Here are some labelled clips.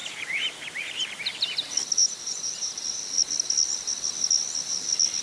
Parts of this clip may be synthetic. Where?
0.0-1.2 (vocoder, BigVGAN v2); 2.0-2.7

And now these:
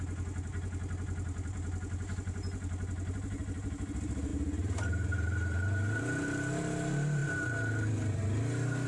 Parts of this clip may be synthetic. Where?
4.3-6.0 (vocoder, BigVGAN v2); 7.2-8.2

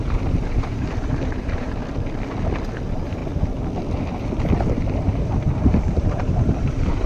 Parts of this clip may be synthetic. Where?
0.0-1.8 (vocoder, BigVGAN v2); 2.8-3.2; 4.9-7.1

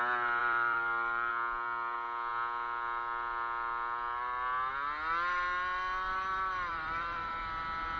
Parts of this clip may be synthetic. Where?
0.4-1.3 (vocoder, BigVGAN v2); 6.7-7.4

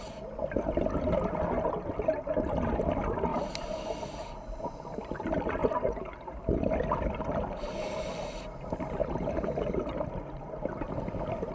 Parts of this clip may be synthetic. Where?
3.3-4.3 (vocoder, BigVGAN v2); 5.6-6.4

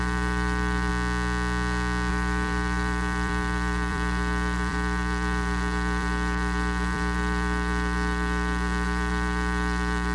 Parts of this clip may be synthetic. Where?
0.0-0.9 (vocoder, BigVGAN v2); 2.1-10.1

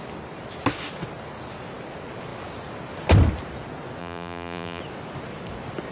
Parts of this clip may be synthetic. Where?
4.0-4.8 (vocoder, BigVGAN v2)